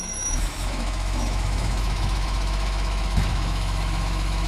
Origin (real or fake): fake